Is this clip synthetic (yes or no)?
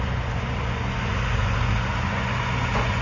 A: yes